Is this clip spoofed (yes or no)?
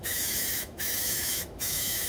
yes